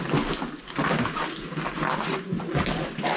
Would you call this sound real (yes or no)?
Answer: yes